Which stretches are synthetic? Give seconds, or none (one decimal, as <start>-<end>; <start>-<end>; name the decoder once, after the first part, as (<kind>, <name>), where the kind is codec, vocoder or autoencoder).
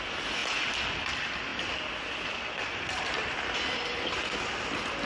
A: none